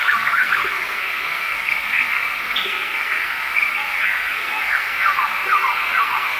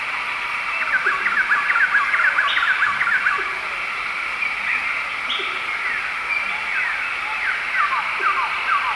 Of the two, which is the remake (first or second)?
first